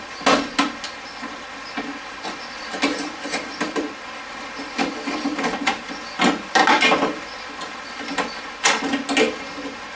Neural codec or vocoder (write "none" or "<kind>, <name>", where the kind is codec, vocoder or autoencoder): none